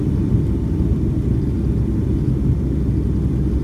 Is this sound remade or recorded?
recorded